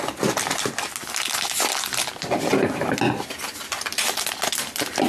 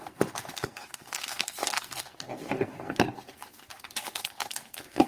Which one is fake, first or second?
second